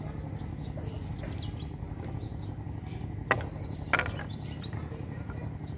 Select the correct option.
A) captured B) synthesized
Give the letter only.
A